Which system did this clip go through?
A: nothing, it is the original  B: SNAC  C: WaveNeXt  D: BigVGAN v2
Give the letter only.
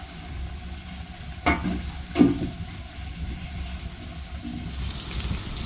A